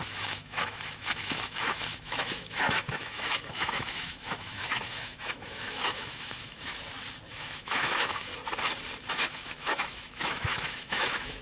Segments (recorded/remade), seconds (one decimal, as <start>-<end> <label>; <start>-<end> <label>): 0.0-6.7 remade; 6.7-7.3 recorded; 7.3-8.3 remade; 8.3-9.1 recorded; 9.1-11.4 remade